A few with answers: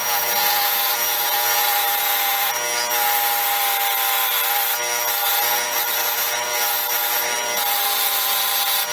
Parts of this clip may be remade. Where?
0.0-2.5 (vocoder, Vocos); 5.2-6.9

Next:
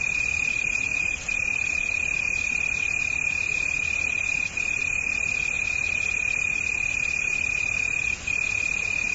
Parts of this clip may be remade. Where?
0.9-2.0 (vocoder, BigVGAN v2)

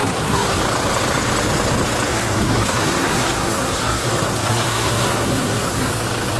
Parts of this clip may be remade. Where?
0.0-0.6 (codec, SNAC); 2.1-5.9